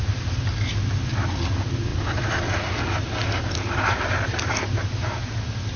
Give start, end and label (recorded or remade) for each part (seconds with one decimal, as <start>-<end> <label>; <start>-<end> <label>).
0.0-5.8 recorded